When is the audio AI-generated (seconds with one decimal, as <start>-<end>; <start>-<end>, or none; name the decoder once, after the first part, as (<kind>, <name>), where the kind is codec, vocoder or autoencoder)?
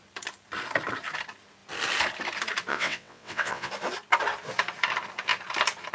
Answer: 2.7-3.7 (vocoder, WaveNeXt)